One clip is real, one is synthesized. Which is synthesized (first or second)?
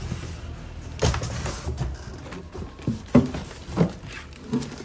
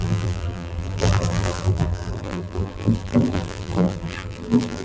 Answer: second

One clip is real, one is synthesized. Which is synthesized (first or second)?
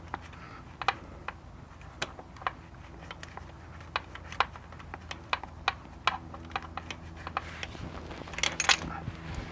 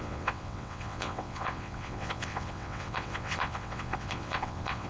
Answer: second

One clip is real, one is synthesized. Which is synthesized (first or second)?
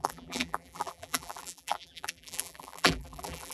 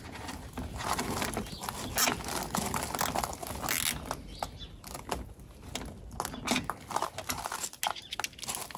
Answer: first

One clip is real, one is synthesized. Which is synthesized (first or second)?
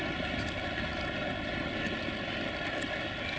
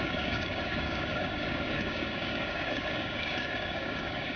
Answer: second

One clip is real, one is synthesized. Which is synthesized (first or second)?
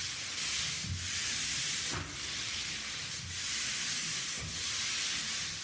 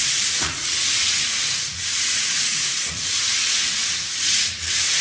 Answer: second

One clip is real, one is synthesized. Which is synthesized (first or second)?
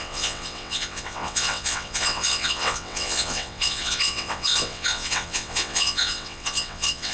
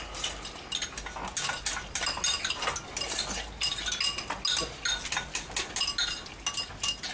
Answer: first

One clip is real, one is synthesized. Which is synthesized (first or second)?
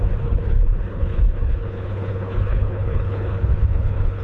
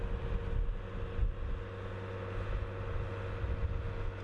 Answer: first